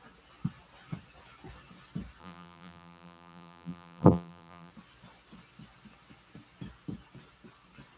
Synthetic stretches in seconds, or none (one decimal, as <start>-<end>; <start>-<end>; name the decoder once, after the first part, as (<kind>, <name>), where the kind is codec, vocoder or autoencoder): 2.2-4.7 (vocoder, BigVGAN v2)